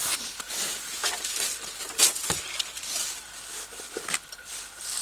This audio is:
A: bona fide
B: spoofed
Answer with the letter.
B